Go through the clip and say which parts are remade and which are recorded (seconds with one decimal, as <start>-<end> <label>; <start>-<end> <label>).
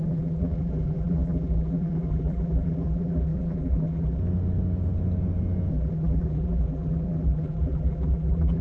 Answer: 0.0-4.2 remade; 4.2-5.7 recorded; 5.7-8.6 remade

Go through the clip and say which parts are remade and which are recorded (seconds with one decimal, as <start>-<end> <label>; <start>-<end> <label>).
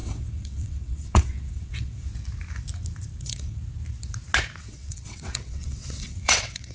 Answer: 0.0-2.1 remade; 2.1-3.2 recorded; 3.2-3.6 remade; 3.6-4.6 recorded; 4.6-6.7 remade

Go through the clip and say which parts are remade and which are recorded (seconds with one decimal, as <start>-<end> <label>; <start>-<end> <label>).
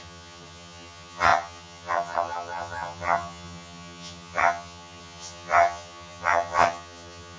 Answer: 0.0-7.4 remade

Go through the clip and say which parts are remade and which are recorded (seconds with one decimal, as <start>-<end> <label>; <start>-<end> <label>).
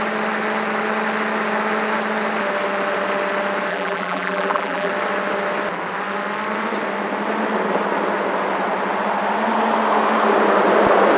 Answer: 0.0-3.7 recorded; 3.7-4.9 remade; 4.9-11.2 recorded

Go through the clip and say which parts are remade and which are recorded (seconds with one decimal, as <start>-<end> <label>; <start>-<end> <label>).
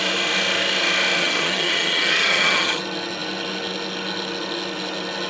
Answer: 0.0-1.2 recorded; 1.2-2.8 remade; 2.8-5.3 recorded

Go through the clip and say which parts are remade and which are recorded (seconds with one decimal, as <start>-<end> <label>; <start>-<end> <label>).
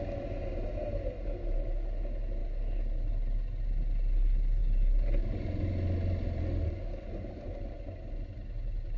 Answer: 0.0-9.0 recorded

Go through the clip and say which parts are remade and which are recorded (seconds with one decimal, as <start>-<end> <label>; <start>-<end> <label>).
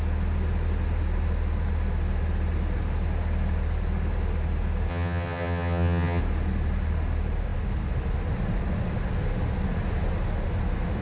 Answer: 0.0-4.9 recorded; 4.9-6.2 remade; 6.2-11.0 recorded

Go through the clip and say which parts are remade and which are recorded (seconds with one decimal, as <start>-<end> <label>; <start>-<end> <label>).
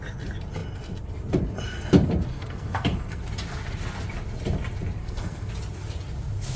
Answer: 0.0-2.3 recorded; 2.3-3.2 remade; 3.2-5.0 recorded; 5.0-5.5 remade; 5.5-6.6 recorded